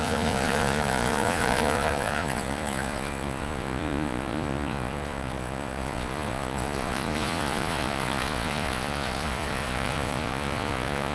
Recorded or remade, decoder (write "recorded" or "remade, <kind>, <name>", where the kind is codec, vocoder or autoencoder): remade, vocoder, Vocos